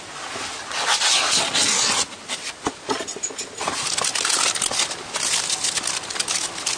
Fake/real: real